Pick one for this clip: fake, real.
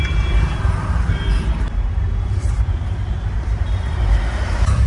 fake